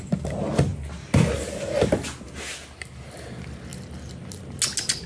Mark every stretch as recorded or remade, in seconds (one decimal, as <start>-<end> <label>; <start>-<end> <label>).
0.0-5.1 recorded